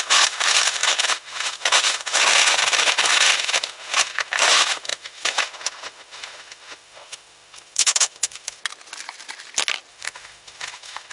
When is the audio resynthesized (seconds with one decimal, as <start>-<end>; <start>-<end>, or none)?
0.0-8.6; 9.9-11.1